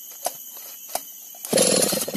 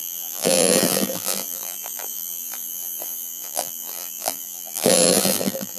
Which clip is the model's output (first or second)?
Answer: second